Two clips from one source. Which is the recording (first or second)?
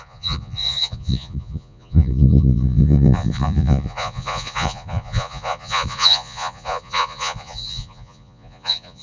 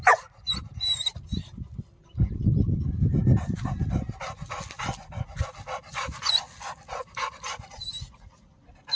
second